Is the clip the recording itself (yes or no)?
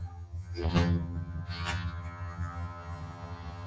no